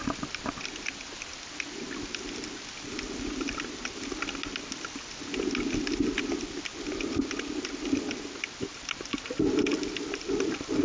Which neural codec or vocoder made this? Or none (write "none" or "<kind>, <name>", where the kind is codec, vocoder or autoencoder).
none